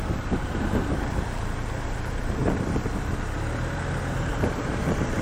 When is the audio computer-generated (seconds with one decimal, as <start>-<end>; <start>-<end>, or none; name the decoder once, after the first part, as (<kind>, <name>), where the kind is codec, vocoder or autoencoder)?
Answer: 0.0-2.4 (vocoder, BigVGAN v2); 4.0-5.2